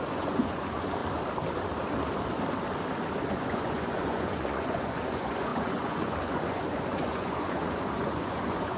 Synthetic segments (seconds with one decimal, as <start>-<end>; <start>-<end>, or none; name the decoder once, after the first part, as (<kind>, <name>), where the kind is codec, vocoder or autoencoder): 0.0-1.0 (vocoder, Vocos); 3.3-8.8